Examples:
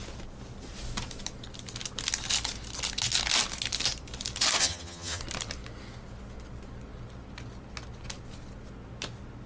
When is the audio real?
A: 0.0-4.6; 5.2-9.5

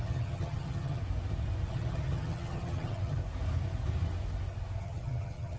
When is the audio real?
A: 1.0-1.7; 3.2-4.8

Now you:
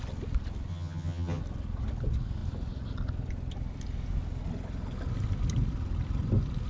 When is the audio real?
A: 0.0-0.7; 1.4-6.7